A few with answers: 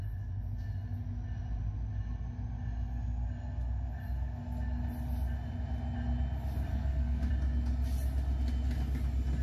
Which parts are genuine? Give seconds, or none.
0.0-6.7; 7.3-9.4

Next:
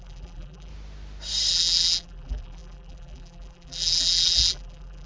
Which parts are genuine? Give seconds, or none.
0.7-1.5

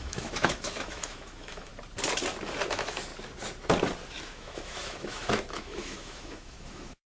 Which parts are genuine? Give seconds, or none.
1.7-2.7; 3.1-4.2

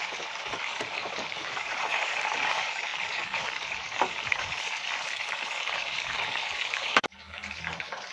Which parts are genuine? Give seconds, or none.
none

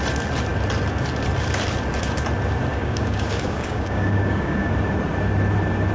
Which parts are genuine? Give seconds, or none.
0.0-2.7; 4.7-5.9

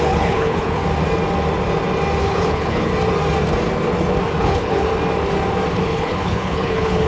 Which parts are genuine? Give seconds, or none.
0.8-2.2; 2.9-4.4; 4.9-5.8

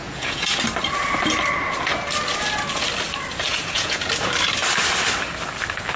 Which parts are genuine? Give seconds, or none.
0.6-3.5; 4.0-6.0